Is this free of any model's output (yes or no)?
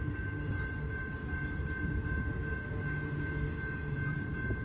yes